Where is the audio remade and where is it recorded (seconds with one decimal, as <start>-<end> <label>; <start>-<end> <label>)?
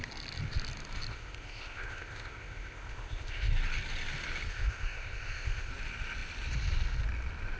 0.0-1.1 recorded; 1.1-3.5 remade; 3.5-4.5 recorded; 4.5-5.7 remade; 5.7-7.6 recorded